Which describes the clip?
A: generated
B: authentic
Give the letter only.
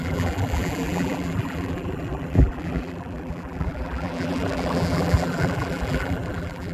A